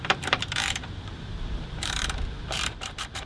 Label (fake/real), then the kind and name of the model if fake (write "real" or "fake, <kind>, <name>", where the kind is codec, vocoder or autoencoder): fake, vocoder, BigVGAN v2